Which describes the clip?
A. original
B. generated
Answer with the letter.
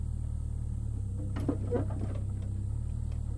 A